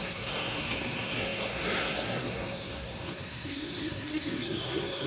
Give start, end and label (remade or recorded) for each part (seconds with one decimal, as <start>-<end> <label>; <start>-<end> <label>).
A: 0.0-5.1 remade